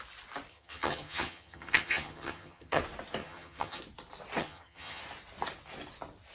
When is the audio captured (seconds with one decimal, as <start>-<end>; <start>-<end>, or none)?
0.0-0.5; 2.8-3.2; 3.8-4.4; 5.0-6.3